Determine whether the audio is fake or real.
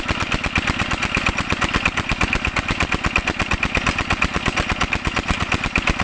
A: real